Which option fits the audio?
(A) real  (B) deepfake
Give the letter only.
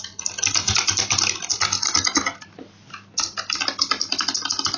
A